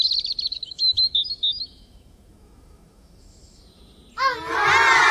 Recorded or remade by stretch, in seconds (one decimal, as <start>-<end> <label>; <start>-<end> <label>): 0.0-0.5 recorded; 0.5-3.6 remade; 3.6-5.1 recorded